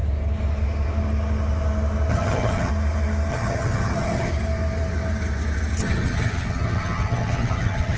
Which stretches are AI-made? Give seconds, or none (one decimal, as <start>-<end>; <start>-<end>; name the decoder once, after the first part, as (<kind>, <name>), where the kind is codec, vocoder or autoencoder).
2.1-2.7 (vocoder, HiFi-GAN); 3.3-4.3; 5.8-8.0